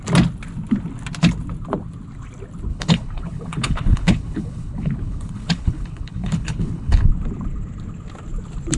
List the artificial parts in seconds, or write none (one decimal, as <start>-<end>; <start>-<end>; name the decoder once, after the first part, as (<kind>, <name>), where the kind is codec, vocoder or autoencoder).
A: 2.7-7.1 (codec, HILCodec)